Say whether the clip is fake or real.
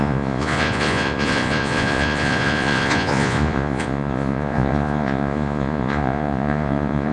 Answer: fake